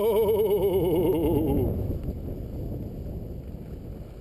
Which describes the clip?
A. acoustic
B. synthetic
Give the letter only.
A